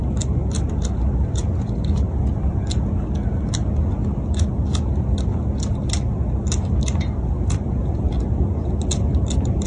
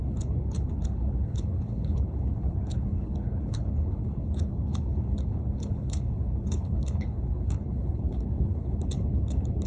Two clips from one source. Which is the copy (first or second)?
second